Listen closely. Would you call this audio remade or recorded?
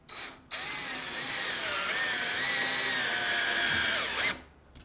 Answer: recorded